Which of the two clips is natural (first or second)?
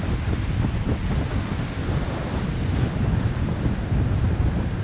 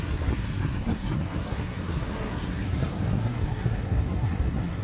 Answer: first